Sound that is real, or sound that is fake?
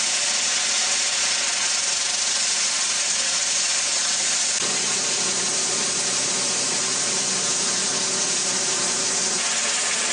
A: real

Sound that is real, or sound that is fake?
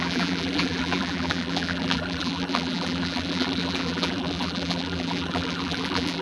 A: fake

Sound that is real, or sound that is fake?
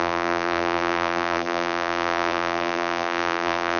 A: fake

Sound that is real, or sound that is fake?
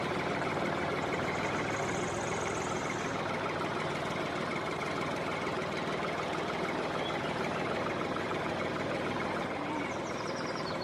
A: fake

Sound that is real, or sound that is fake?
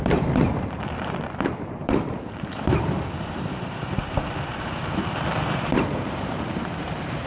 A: fake